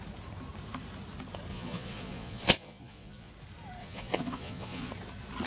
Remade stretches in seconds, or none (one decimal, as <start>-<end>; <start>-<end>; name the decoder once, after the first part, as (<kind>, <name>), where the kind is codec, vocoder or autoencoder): 1.5-3.3 (vocoder, Vocos); 3.8-4.9